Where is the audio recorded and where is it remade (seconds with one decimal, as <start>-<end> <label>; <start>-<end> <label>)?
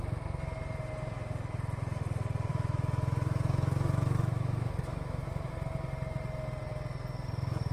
0.0-2.5 recorded; 2.5-5.5 remade; 5.5-7.7 recorded